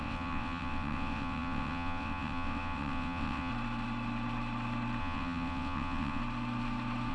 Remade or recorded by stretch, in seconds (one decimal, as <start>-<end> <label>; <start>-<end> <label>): 0.0-3.5 remade; 3.5-5.0 recorded; 5.0-6.2 remade; 6.2-7.1 recorded